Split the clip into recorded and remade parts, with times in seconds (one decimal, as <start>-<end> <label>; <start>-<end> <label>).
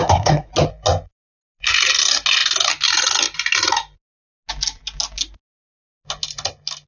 0.0-0.5 remade; 0.5-6.9 recorded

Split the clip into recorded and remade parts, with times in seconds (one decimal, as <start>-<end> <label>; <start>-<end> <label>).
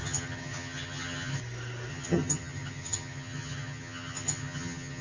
0.0-1.4 remade; 1.4-1.9 recorded; 1.9-5.0 remade